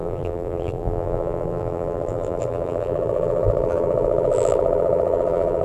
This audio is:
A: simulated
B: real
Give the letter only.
A